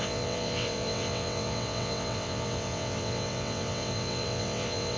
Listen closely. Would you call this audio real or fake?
fake